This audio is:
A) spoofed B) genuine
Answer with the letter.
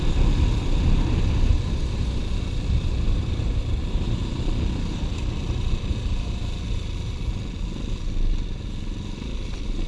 B